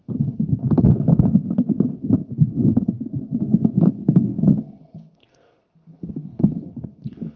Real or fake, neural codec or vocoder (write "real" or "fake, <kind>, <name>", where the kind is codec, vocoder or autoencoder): fake, codec, SNAC